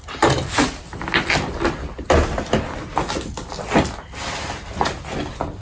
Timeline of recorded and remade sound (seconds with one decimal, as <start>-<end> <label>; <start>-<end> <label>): 0.0-5.6 recorded